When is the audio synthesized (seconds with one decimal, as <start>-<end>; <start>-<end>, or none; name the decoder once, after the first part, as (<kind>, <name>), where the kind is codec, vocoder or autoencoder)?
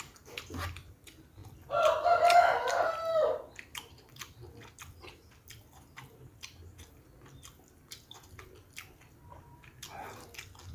none